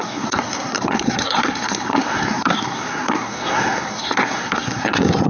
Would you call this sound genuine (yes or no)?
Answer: no